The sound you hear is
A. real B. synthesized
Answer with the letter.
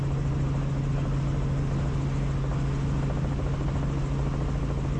A